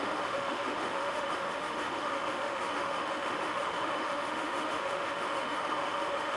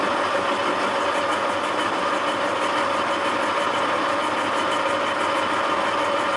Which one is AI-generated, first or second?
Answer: first